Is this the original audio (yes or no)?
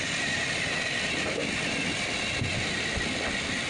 yes